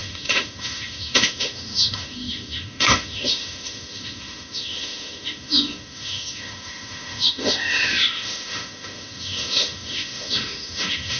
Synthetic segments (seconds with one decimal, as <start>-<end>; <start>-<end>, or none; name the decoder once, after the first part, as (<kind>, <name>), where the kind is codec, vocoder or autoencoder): 0.0-11.2 (autoencoder, DAC-VAE)